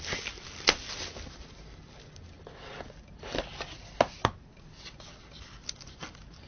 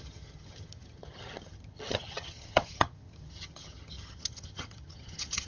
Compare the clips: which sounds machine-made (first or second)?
second